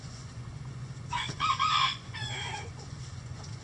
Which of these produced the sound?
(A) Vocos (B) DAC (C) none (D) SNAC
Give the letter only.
A